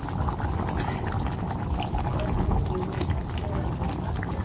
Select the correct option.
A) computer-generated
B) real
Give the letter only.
B